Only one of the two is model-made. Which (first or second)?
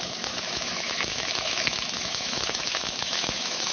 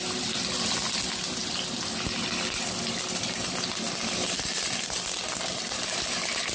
first